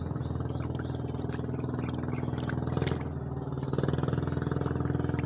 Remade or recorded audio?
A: recorded